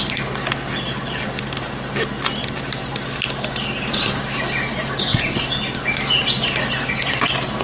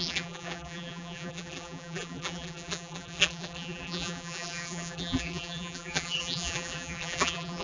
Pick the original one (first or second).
first